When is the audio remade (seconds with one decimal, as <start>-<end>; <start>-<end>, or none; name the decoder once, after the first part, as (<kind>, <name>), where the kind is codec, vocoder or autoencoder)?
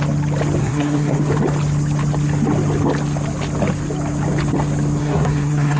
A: 0.6-1.3 (codec, SNAC); 5.0-5.8